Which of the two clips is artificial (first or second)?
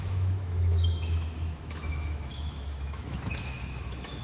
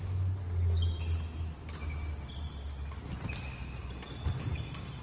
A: first